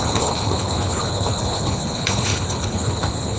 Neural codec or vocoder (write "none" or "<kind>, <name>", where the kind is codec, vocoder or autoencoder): codec, HILCodec